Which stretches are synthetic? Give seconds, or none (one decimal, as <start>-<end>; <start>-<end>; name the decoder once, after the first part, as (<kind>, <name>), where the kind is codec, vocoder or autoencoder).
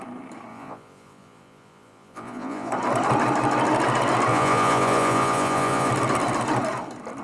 0.5-2.7 (vocoder, Vocos); 4.3-5.9